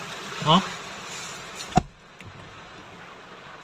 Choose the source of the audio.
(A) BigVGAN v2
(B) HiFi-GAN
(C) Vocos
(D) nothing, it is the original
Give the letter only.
D